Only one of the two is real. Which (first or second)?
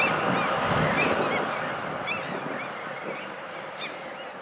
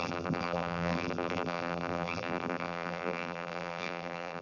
first